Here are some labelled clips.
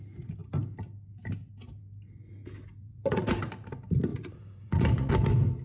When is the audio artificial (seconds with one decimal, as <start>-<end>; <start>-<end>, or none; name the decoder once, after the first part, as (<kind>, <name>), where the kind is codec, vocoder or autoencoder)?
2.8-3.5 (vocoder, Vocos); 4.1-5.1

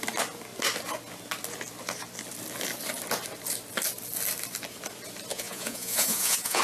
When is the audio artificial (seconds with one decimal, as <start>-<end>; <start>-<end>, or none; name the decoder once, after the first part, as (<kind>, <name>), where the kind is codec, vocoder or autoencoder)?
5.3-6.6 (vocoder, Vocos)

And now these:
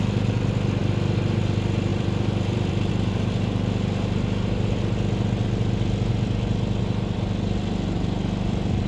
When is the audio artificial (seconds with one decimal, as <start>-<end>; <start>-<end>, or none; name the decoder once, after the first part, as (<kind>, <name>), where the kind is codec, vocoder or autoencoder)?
0.8-1.4 (vocoder, BigVGAN v2); 1.9-2.9